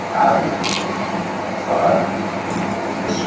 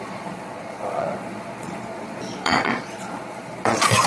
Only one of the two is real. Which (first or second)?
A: first